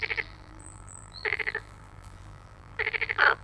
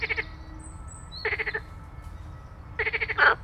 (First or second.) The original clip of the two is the second